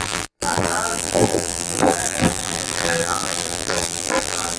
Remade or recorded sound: remade